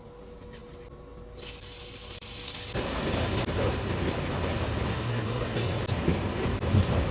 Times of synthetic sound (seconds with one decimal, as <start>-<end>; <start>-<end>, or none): 4.9-5.8